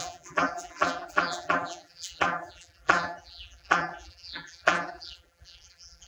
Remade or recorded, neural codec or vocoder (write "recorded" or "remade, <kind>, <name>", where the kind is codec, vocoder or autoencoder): remade, vocoder, BigVGAN v2